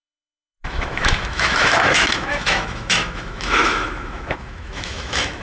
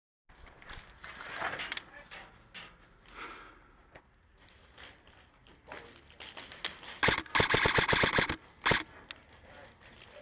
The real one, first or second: second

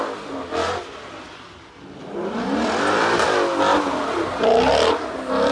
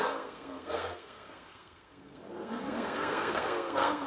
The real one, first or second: first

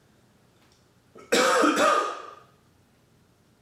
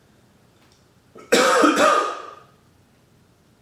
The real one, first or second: first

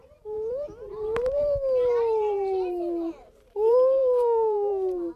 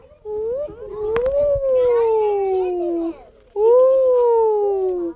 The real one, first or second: second